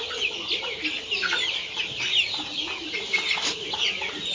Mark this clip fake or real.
real